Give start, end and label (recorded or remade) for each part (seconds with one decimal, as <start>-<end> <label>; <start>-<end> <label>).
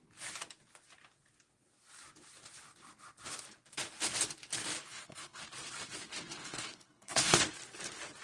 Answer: 0.0-4.8 recorded; 4.8-5.4 remade; 5.4-6.3 recorded; 6.3-7.4 remade; 7.4-8.2 recorded